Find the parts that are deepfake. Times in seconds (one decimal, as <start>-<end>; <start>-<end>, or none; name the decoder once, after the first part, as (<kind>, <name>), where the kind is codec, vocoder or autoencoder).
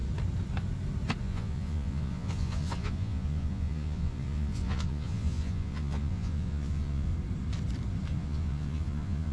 1.2-7.1 (vocoder, Vocos); 8.1-9.3